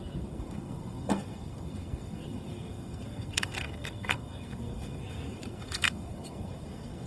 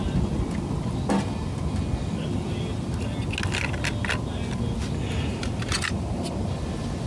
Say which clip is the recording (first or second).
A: second